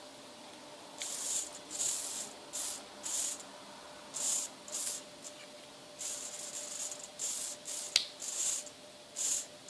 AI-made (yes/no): no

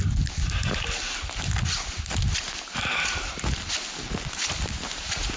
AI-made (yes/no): no